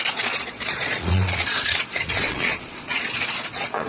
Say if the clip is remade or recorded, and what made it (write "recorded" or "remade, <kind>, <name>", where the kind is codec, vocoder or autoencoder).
remade, vocoder, Vocos